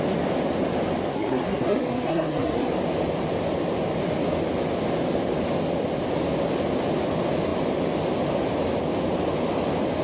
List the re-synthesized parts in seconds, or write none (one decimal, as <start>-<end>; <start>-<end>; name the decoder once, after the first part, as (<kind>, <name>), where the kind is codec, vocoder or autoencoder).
1.1-2.7 (codec, SNAC)